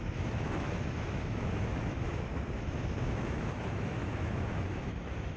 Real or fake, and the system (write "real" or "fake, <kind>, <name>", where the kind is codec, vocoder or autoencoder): fake, autoencoder, DAC-VAE